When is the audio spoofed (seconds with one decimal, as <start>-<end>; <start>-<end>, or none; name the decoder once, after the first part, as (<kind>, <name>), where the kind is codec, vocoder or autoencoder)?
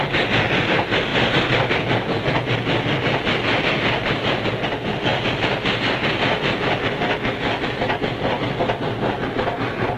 1.1-1.7 (vocoder, BigVGAN v2)